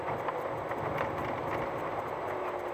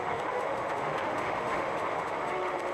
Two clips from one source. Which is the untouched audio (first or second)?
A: first